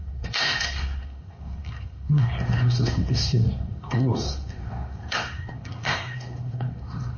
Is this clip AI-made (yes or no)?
yes